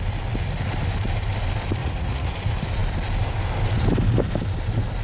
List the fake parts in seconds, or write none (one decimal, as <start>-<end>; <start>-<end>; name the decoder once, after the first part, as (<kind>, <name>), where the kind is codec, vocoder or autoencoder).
1.8-2.3 (vocoder, Vocos)